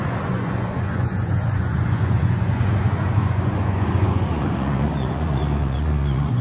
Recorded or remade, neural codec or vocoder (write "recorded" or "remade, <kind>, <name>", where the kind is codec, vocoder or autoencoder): remade, vocoder, Vocos